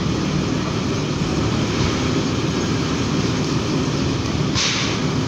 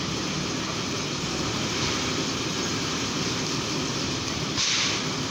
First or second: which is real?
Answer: first